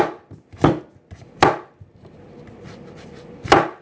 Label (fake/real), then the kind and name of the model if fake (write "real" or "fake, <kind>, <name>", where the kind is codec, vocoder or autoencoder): real